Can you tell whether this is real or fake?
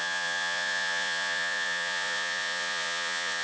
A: fake